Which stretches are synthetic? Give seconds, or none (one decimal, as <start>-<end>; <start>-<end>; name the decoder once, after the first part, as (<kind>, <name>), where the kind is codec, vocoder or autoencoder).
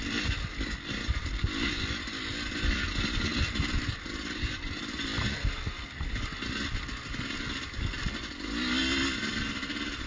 none